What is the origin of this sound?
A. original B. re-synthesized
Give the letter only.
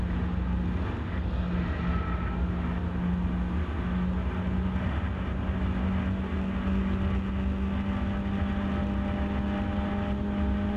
A